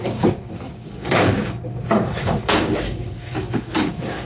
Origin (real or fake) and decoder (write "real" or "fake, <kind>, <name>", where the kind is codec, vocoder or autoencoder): fake, codec, DAC